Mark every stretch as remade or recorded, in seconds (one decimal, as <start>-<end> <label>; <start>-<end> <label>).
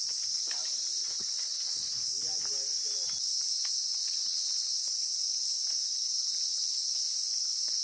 0.0-1.0 recorded; 1.0-1.7 remade; 1.7-4.0 recorded; 4.0-4.7 remade; 4.7-7.8 recorded